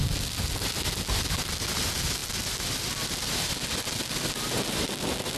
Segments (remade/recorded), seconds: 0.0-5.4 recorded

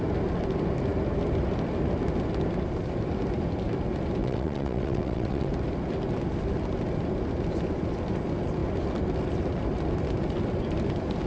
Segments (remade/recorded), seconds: 0.0-4.2 recorded; 4.2-5.5 remade; 5.5-11.3 recorded

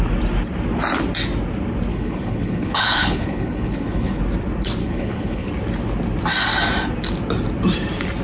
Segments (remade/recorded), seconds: 0.0-1.9 recorded; 1.9-4.2 remade; 4.2-4.8 recorded; 4.8-5.5 remade; 5.5-8.2 recorded